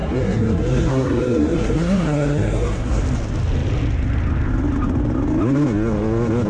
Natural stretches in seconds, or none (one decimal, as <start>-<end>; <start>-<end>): 3.0-6.5